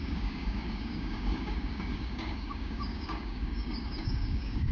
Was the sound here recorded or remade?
remade